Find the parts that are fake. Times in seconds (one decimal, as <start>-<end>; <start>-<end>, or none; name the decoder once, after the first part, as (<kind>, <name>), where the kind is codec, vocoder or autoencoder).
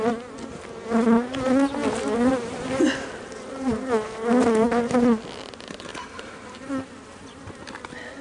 5.9-6.7 (vocoder, BigVGAN v2)